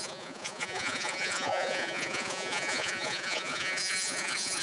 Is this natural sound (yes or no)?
no